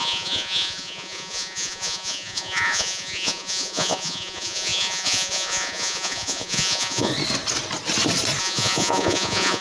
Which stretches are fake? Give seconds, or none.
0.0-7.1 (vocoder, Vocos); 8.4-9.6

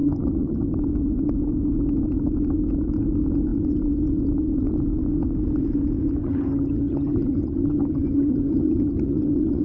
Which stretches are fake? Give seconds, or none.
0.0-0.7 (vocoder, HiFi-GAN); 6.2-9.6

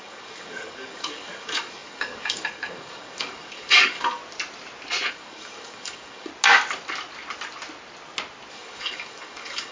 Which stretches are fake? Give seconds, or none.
0.0-4.2 (codec, DAC); 5.1-6.3; 8.5-9.7

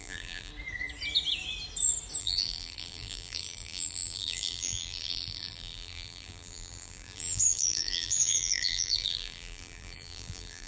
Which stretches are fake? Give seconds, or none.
0.0-0.5 (vocoder, BigVGAN v2); 2.2-10.7

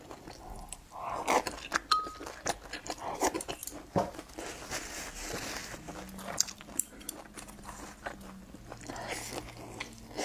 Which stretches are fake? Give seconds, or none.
none